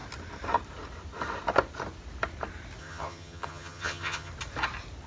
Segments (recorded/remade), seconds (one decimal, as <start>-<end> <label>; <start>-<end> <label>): 0.0-2.8 recorded; 2.8-4.3 remade; 4.3-5.1 recorded